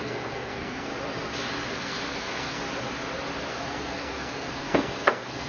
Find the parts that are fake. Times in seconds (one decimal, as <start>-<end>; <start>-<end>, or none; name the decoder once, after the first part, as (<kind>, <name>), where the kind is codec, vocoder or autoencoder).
0.0-0.9 (codec, SNAC); 1.7-2.6; 3.5-5.5